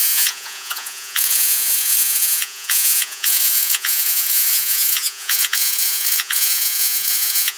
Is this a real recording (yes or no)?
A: no